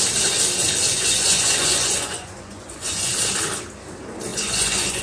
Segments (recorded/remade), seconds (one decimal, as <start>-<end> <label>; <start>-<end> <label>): 0.0-0.9 recorded; 0.9-3.1 remade; 3.1-4.3 recorded; 4.3-5.0 remade